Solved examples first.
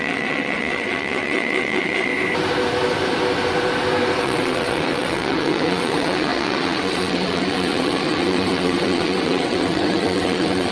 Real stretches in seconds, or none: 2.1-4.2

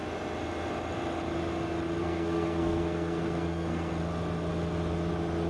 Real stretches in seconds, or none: 0.0-2.0; 3.9-5.5

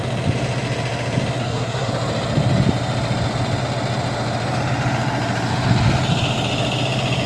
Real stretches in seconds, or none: 0.0-1.4; 1.9-7.3

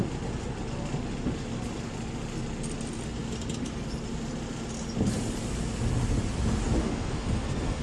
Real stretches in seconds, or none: 0.0-6.8